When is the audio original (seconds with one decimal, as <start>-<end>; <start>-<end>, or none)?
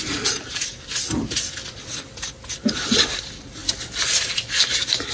0.7-3.0; 3.6-4.6